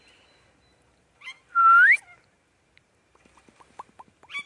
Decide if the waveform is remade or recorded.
recorded